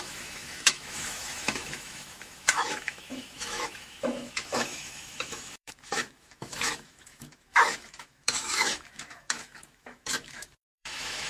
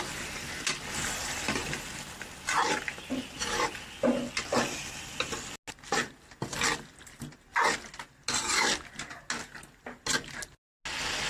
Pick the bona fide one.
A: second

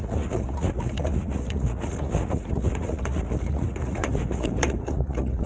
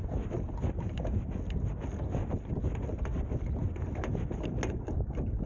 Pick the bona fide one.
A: second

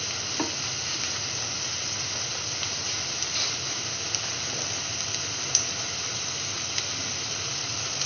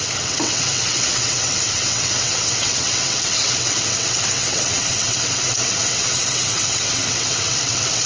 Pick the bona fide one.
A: first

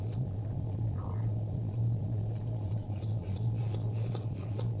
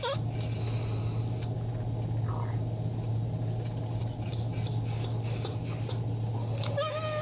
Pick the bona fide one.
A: second